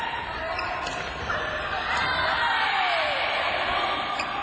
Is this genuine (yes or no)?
no